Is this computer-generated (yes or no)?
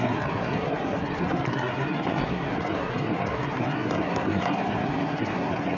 yes